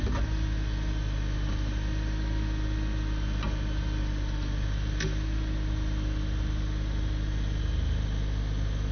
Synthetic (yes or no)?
no